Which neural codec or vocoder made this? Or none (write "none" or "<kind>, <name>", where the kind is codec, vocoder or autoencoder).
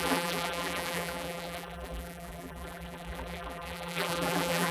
vocoder, BigVGAN v2